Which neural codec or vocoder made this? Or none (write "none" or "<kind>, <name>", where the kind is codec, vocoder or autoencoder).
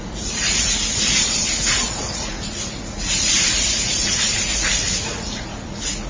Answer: vocoder, Vocos